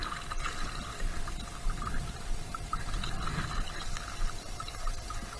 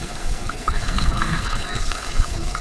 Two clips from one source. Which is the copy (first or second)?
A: second